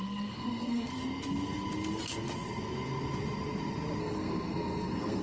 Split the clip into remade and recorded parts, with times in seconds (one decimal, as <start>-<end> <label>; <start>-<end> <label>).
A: 0.0-0.9 remade; 0.9-4.0 recorded; 4.0-5.2 remade